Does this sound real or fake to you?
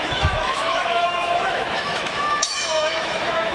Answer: fake